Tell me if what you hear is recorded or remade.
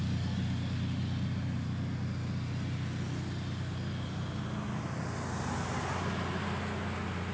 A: recorded